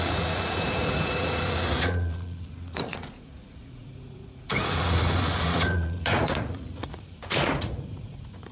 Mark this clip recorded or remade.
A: remade